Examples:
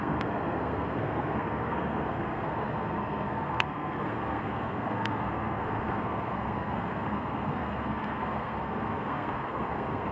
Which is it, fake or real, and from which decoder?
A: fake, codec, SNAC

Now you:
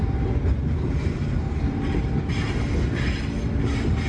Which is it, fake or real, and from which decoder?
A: real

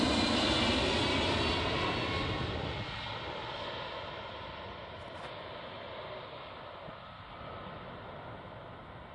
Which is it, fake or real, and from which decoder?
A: real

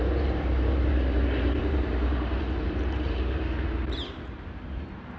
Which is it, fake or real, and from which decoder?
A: fake, vocoder, BigVGAN v2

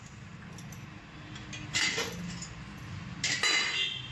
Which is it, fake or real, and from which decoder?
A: real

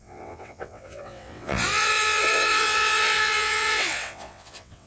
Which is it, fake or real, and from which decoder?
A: fake, vocoder, WaveNeXt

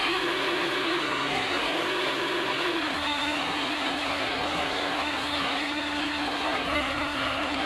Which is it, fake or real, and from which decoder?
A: fake, codec, SNAC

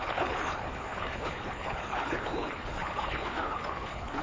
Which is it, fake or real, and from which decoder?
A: fake, codec, HILCodec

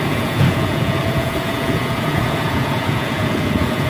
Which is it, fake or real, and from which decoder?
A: fake, vocoder, Vocos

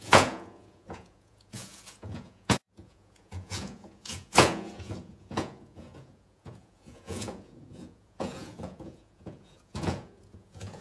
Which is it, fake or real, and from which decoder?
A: fake, vocoder, Vocos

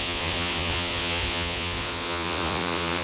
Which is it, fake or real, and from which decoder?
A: fake, vocoder, Vocos